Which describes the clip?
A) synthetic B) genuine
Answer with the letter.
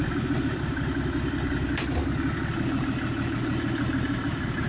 B